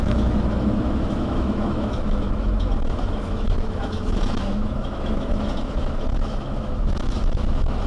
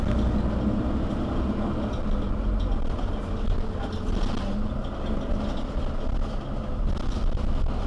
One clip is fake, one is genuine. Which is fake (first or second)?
first